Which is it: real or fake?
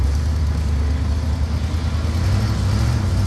real